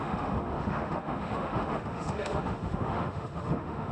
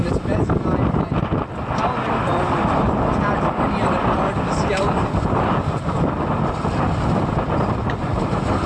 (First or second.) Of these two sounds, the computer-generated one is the first